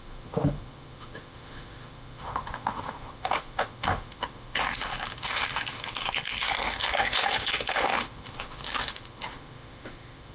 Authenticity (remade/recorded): remade